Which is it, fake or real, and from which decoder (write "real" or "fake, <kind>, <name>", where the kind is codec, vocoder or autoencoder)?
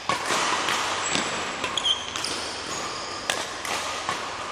fake, vocoder, BigVGAN v2